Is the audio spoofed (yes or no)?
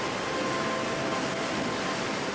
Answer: no